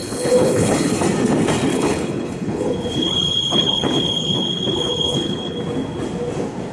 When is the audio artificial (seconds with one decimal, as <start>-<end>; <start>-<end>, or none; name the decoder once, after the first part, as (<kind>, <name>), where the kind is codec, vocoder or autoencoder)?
0.0-0.9 (codec, HILCodec); 1.7-5.6

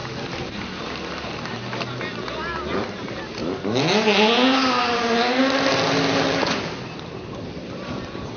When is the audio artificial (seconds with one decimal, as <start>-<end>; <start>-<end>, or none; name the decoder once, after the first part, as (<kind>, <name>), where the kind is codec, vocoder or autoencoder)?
none

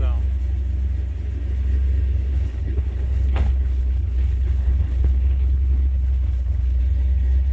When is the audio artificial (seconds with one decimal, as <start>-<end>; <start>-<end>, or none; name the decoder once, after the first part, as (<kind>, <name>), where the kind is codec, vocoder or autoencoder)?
2.3-6.8 (codec, HILCodec)

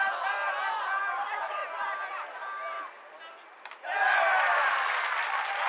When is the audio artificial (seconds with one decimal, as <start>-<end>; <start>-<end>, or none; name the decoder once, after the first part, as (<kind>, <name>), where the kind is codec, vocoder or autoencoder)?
none

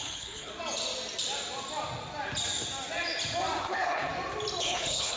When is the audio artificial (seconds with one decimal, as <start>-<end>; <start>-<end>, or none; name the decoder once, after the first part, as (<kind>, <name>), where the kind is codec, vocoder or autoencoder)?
0.0-0.5 (codec, HILCodec); 3.6-4.1; 4.6-5.2

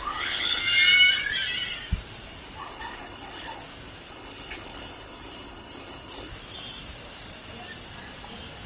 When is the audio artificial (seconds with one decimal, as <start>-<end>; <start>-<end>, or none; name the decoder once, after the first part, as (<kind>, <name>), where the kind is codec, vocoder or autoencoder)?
0.0-0.6 (codec, HILCodec); 2.6-3.6; 4.1-6.3

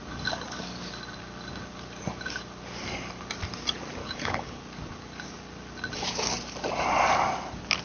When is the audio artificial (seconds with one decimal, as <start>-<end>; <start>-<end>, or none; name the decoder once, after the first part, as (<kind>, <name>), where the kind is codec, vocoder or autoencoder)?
4.0-4.6 (codec, HILCodec)

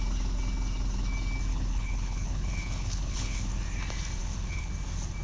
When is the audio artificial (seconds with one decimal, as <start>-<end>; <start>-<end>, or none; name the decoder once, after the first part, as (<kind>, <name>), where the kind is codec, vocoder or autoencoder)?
1.5-3.5 (codec, HILCodec); 4.2-4.7